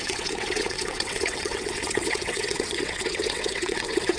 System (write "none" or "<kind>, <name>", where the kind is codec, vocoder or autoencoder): vocoder, WaveNeXt